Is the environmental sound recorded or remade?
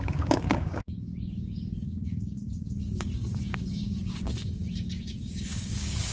remade